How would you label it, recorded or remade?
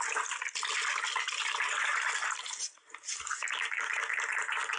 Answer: recorded